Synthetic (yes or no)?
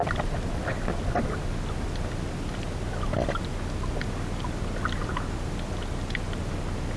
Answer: no